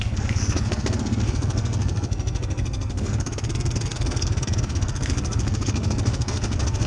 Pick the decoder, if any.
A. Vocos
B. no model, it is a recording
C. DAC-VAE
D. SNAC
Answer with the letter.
D